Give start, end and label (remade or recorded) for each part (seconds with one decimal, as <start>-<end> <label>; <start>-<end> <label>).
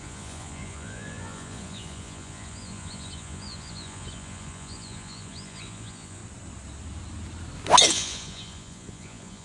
0.0-6.2 remade; 6.2-7.9 recorded; 7.9-9.4 remade